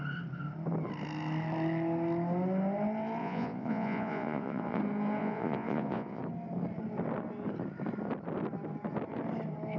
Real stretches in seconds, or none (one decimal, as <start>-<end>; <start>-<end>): 0.0-3.2; 4.8-5.2; 6.2-9.8